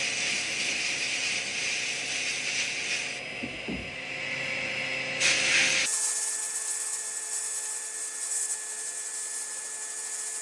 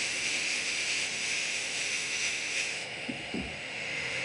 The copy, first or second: second